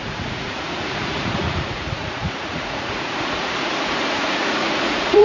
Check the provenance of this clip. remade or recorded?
remade